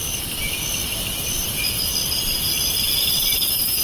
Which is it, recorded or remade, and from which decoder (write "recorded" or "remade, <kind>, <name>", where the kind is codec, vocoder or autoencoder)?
recorded